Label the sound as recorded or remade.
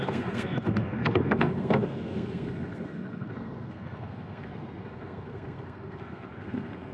remade